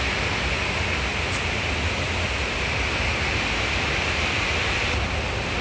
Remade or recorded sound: recorded